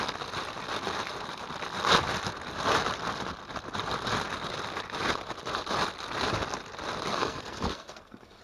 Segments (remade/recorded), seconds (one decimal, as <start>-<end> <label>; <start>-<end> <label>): 0.0-7.1 recorded; 7.1-8.4 remade